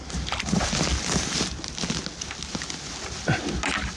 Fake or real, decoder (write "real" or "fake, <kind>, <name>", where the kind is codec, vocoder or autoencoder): real